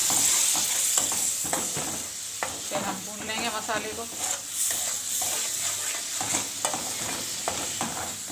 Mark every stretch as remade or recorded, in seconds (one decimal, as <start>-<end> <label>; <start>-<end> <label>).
0.0-8.3 recorded